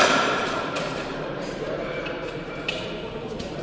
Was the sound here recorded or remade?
remade